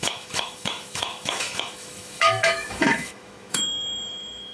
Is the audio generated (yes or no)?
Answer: yes